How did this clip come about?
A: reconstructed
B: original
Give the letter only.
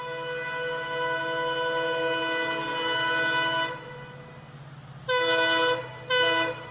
B